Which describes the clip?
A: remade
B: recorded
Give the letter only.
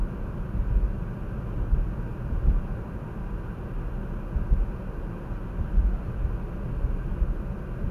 B